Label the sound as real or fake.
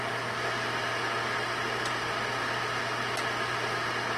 real